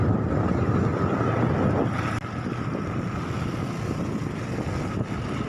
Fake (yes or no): no